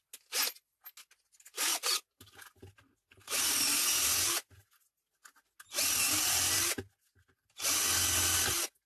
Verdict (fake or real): real